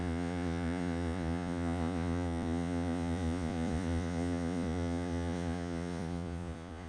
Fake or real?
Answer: fake